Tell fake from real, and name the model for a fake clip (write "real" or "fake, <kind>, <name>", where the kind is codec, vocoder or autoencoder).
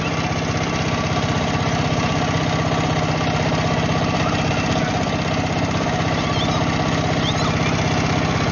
real